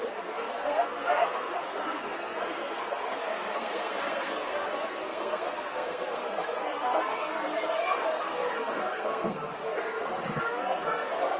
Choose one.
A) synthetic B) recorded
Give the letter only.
A